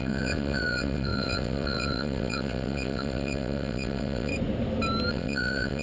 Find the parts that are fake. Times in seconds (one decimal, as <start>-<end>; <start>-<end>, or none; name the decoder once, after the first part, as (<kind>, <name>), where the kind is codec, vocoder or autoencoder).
0.0-4.3 (vocoder, WaveNeXt); 5.1-5.8